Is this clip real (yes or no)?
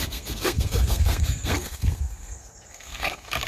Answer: no